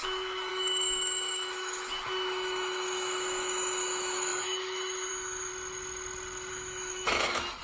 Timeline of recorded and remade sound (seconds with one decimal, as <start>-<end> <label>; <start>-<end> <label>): 0.0-5.5 remade; 5.5-6.5 recorded; 6.5-7.6 remade